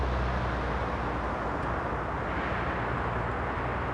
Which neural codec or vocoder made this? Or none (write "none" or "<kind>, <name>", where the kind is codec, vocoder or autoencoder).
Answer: none